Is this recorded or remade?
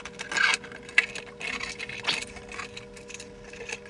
recorded